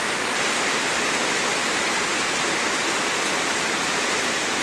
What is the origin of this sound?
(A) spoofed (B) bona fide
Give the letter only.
B